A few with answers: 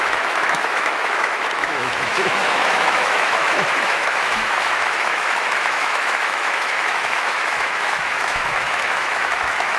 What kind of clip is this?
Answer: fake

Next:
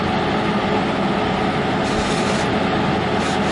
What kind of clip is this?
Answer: real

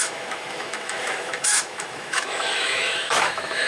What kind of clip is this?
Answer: fake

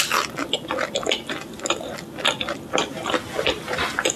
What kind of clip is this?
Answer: real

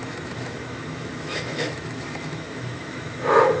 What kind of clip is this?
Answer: fake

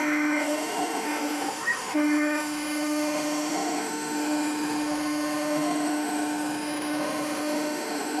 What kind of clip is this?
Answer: fake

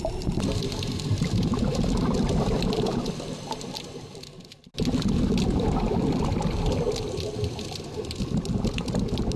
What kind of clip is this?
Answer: real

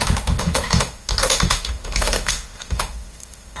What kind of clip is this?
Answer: fake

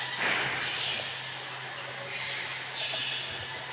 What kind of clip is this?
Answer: real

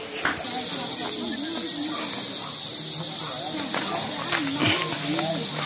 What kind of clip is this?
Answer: real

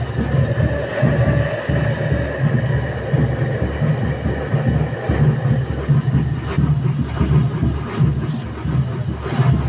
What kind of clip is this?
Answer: real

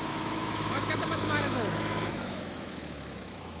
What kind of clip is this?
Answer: fake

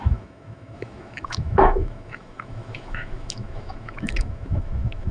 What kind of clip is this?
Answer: fake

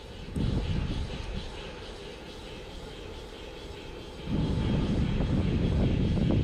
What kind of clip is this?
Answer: real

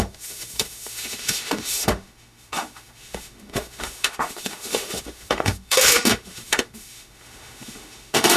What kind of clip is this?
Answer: fake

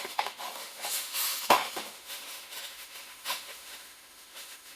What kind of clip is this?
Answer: fake